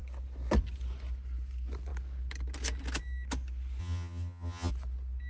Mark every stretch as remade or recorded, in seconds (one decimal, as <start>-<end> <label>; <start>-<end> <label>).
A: 0.0-3.8 recorded; 3.8-4.7 remade; 4.7-5.3 recorded